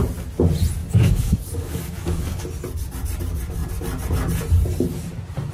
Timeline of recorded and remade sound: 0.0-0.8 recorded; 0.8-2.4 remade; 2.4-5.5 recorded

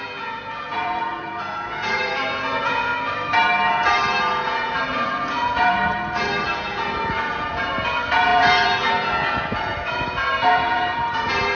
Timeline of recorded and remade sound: 0.0-2.9 remade; 2.9-3.7 recorded; 3.7-11.5 remade

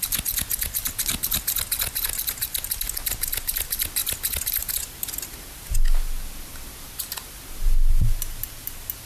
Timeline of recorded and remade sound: 0.0-9.1 recorded

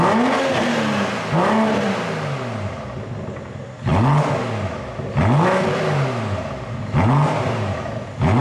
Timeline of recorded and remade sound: 0.0-8.4 recorded

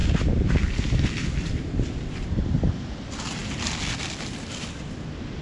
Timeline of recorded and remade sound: 0.0-5.4 recorded